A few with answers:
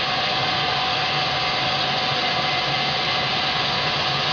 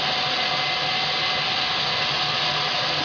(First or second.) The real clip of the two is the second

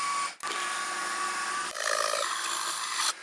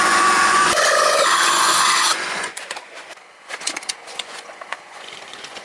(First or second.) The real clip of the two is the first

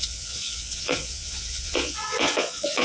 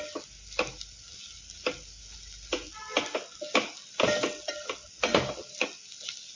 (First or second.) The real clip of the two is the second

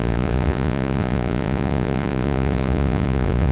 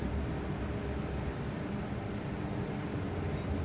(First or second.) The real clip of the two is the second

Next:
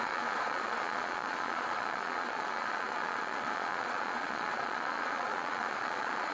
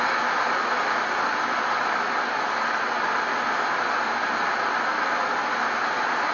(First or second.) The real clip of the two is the second